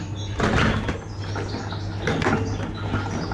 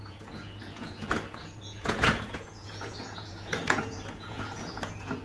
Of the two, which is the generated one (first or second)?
second